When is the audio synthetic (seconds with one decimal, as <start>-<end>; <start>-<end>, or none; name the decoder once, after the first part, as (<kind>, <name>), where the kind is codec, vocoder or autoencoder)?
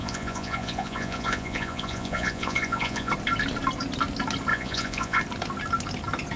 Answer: 0.0-3.1 (vocoder, Vocos); 4.5-5.2